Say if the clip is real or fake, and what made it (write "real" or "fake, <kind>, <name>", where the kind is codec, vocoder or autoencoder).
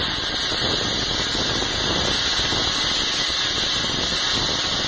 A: real